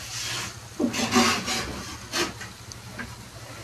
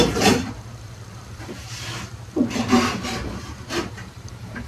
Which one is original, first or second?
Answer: first